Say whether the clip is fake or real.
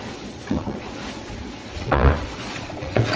fake